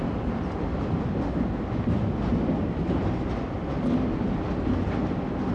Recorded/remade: recorded